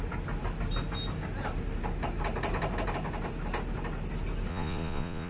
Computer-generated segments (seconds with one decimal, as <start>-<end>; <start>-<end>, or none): 4.5-5.3

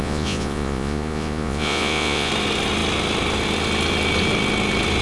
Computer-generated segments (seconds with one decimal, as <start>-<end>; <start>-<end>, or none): 0.0-2.3